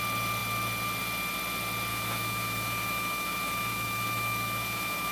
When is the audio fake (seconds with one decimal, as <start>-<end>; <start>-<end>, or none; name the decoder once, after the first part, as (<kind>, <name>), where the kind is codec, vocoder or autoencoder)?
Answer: 1.9-5.1 (autoencoder, DAC-VAE)